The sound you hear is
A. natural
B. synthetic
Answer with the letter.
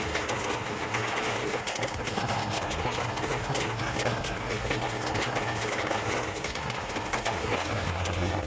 B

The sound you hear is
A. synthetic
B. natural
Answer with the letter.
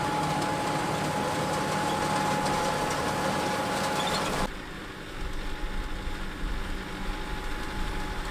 B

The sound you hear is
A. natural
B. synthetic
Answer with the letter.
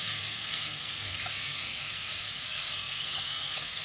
B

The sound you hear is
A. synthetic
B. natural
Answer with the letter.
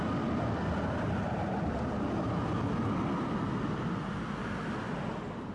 B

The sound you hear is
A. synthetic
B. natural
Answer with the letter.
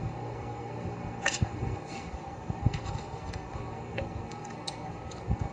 A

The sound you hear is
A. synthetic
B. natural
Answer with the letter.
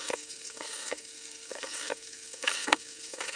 A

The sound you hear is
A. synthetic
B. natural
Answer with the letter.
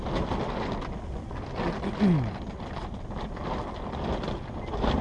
B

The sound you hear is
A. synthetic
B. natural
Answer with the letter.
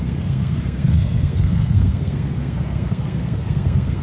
A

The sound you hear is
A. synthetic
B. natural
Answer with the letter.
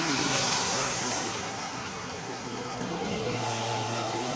A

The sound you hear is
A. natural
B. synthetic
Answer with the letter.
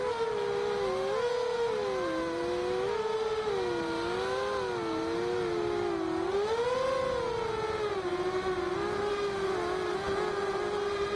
A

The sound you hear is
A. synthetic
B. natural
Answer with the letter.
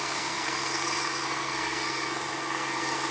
A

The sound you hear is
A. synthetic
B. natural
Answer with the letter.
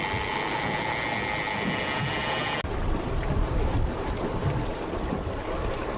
B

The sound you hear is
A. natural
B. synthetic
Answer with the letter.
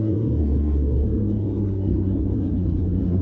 B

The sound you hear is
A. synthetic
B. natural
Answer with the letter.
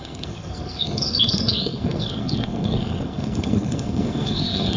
A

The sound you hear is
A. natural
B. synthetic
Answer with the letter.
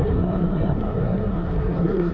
B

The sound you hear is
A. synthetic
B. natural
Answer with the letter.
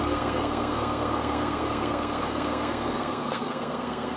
A